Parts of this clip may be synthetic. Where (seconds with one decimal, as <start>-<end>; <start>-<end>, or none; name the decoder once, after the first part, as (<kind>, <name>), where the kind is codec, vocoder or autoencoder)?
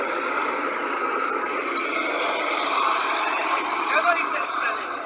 0.4-3.0 (vocoder, BigVGAN v2)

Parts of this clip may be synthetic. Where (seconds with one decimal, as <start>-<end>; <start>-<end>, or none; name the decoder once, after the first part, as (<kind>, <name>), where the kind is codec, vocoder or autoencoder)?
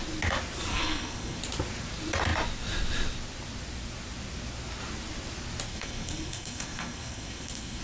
0.7-1.4 (codec, SNAC); 5.7-7.8